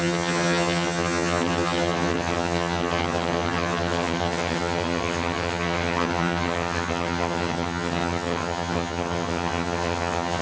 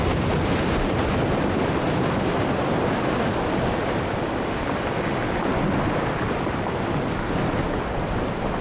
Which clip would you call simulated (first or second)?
first